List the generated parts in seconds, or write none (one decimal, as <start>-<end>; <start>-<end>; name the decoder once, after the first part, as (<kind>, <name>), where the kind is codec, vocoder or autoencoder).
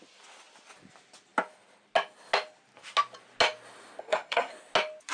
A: 4.0-4.5 (codec, SNAC)